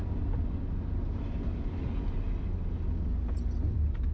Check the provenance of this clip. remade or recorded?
recorded